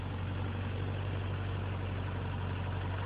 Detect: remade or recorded recorded